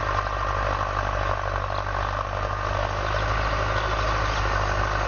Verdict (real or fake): real